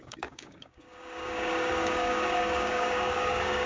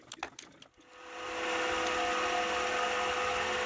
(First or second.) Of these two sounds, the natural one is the second